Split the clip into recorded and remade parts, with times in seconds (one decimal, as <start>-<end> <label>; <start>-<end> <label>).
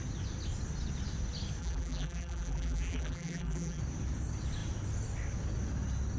0.0-1.6 recorded; 1.6-3.8 remade; 3.8-6.2 recorded